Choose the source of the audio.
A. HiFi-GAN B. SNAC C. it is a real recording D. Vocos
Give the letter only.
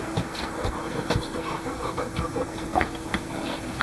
B